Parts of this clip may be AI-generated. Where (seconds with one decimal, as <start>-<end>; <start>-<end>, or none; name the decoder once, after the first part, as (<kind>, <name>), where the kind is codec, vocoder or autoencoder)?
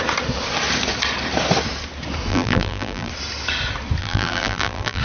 2.3-3.1 (vocoder, BigVGAN v2); 4.0-5.0